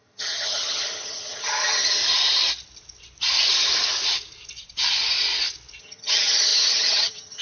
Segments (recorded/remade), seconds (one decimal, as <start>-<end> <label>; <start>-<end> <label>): 0.0-2.0 remade; 2.0-5.8 recorded; 5.8-7.4 remade